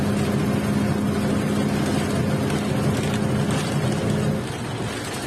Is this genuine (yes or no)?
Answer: yes